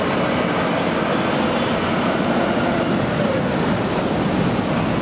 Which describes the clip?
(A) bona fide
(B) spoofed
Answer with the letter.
A